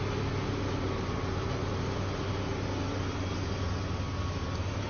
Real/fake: real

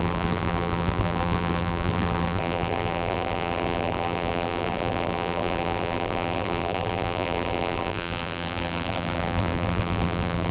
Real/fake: fake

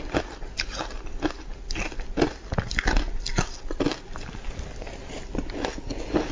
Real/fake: real